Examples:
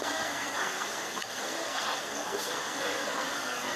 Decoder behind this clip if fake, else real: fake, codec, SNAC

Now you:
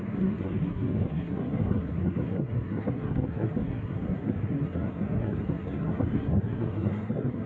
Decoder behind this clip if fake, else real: fake, codec, SNAC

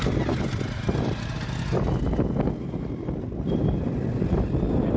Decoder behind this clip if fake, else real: real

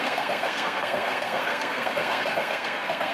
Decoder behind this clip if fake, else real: fake, codec, SNAC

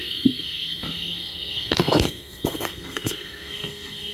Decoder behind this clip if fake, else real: fake, codec, SNAC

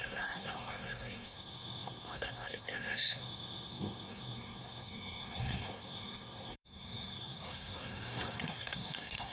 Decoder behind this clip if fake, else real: fake, codec, SNAC